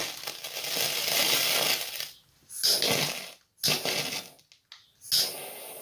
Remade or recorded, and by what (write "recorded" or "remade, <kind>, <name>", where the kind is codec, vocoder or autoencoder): recorded